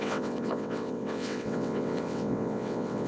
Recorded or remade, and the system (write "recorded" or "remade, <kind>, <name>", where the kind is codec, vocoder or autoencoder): remade, vocoder, WaveNeXt